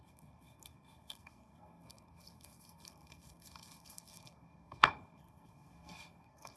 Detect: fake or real fake